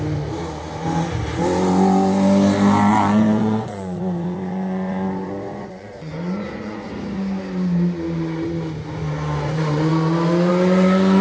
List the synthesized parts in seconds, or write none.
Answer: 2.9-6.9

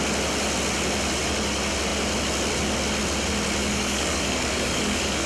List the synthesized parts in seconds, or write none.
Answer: 3.6-5.3

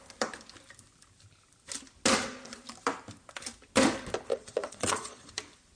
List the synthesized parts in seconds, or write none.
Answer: 4.3-5.3